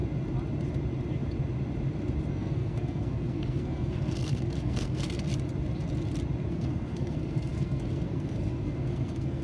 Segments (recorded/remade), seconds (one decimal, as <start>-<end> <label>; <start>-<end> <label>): 0.0-2.3 recorded; 2.3-5.3 remade; 5.3-6.5 recorded; 6.5-9.4 remade